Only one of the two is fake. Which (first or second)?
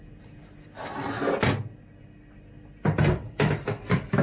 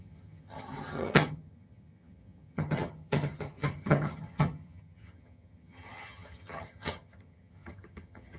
second